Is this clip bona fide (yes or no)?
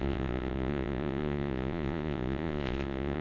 no